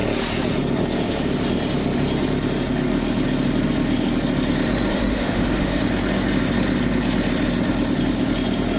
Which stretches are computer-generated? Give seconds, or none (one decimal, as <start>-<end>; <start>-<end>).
4.9-5.8